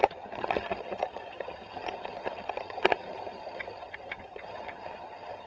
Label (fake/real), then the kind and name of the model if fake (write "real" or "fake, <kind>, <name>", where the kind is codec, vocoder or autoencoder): fake, vocoder, HiFi-GAN